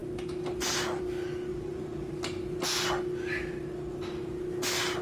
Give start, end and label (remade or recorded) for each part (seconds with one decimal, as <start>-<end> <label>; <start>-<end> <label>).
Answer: 0.0-1.5 recorded; 1.5-2.1 remade; 2.1-5.0 recorded